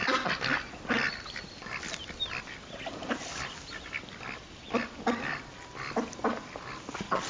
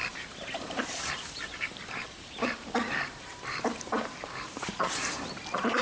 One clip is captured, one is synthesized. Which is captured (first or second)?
first